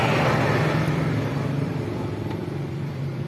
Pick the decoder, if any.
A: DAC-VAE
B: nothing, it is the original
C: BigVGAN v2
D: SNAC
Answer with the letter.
C